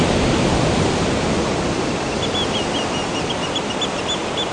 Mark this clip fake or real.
real